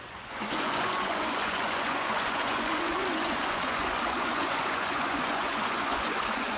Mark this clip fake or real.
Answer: fake